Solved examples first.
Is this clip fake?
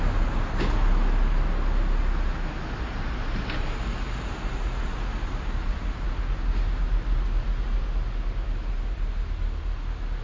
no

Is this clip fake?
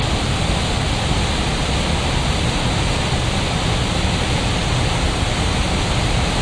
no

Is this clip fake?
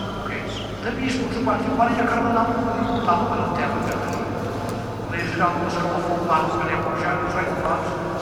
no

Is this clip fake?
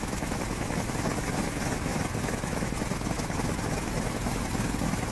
yes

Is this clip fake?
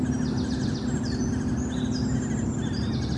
no